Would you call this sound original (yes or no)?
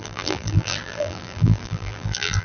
no